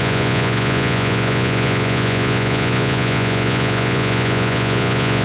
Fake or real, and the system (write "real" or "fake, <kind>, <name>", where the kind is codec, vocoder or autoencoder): fake, vocoder, Vocos